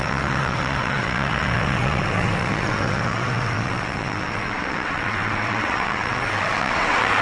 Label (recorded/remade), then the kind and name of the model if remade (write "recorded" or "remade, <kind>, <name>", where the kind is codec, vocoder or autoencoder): remade, vocoder, WaveNeXt